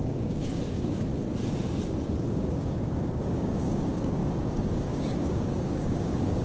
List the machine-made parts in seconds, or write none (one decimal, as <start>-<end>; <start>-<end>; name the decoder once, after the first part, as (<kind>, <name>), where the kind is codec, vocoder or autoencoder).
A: 0.0-1.1 (codec, DAC); 2.2-6.4